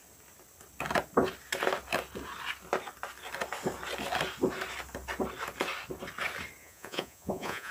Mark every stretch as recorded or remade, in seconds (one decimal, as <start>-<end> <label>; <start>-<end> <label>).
0.0-6.6 recorded; 6.6-7.7 remade